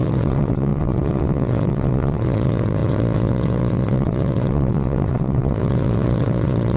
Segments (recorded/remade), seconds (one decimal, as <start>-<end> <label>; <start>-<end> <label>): 0.0-6.8 remade